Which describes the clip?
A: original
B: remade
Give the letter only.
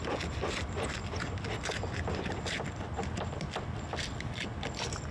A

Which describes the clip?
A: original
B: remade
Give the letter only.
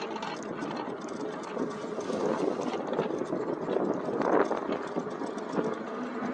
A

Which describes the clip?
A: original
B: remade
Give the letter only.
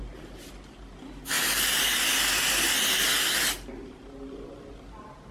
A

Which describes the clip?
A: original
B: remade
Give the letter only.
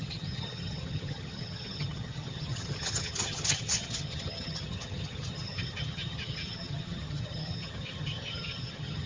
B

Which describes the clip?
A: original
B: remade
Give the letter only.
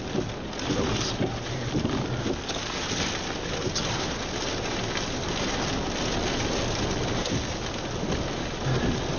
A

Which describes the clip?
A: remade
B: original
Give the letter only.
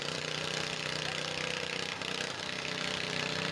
A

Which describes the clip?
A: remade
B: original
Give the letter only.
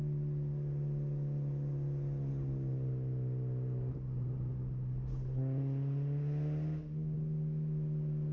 B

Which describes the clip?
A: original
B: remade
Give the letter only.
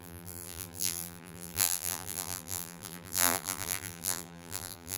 B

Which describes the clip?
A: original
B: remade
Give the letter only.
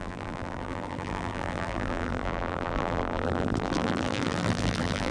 B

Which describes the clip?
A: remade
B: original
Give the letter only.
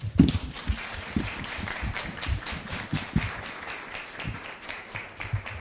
A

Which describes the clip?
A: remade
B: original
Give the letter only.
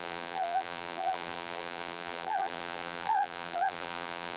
A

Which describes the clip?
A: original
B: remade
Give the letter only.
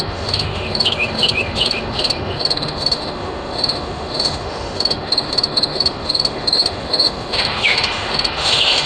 B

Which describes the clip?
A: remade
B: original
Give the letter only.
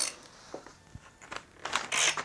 B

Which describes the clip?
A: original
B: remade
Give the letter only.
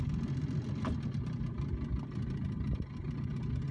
A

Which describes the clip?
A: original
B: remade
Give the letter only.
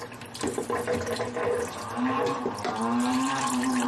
B